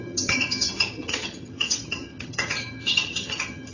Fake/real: fake